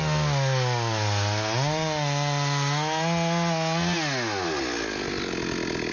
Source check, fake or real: real